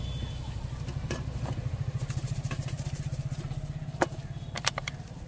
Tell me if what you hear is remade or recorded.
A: remade